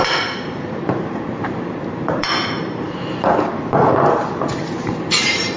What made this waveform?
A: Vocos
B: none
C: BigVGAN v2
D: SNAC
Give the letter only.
C